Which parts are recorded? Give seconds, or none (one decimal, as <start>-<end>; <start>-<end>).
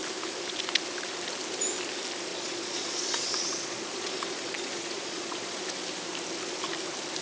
0.0-2.3; 5.6-7.2